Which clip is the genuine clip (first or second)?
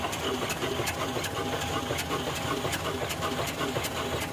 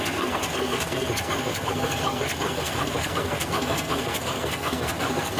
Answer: first